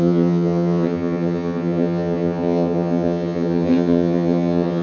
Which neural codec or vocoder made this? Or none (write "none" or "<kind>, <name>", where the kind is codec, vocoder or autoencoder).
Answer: vocoder, HiFi-GAN